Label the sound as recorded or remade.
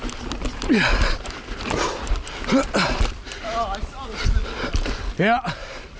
recorded